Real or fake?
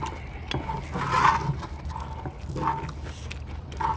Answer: real